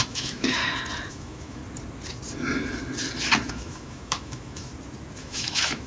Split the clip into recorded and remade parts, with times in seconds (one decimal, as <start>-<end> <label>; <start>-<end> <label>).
0.0-0.6 remade; 0.6-1.1 recorded; 1.1-1.6 remade; 1.6-3.5 recorded; 3.5-4.7 remade; 4.7-5.2 recorded; 5.2-5.9 remade